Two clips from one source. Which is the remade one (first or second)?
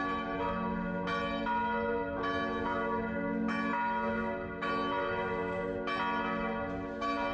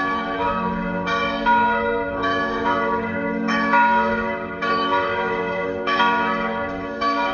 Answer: second